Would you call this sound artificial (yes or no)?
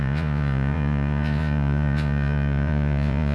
yes